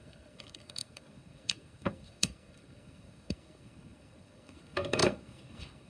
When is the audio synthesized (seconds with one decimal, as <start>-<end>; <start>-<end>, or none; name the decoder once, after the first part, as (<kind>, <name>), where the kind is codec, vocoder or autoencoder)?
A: 0.0-5.9 (codec, SNAC)